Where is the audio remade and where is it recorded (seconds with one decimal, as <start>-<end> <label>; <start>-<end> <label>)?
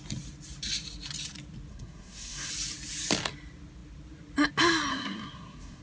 0.0-1.7 recorded; 1.7-2.5 remade; 2.5-4.9 recorded; 4.9-5.8 remade